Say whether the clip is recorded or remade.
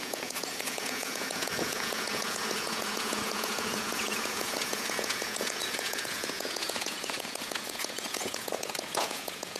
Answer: remade